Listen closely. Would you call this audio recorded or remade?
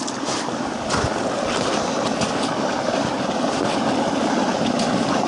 recorded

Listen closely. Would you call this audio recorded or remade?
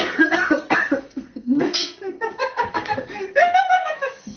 remade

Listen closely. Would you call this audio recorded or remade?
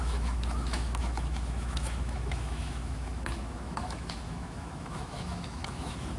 remade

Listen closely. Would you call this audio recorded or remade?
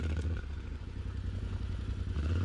remade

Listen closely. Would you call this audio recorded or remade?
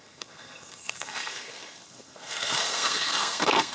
remade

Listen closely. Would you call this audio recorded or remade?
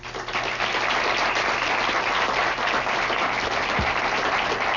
recorded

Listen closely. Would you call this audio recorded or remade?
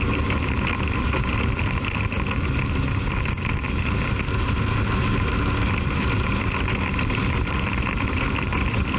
recorded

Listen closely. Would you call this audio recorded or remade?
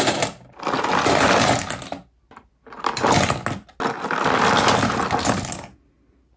recorded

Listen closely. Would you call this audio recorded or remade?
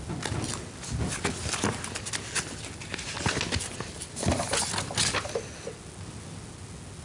recorded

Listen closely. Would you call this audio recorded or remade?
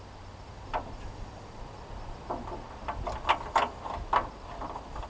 recorded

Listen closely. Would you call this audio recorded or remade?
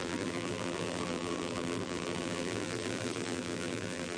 remade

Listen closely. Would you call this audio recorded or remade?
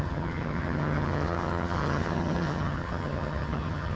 remade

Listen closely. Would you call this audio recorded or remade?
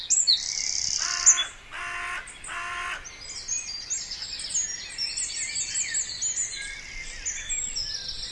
recorded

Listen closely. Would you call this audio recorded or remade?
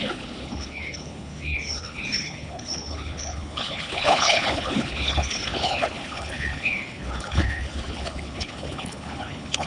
remade